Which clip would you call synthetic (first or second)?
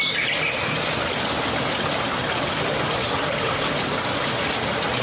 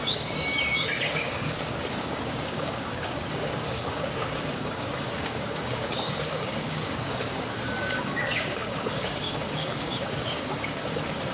second